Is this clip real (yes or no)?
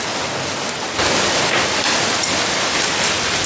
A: yes